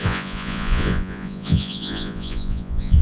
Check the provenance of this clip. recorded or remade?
remade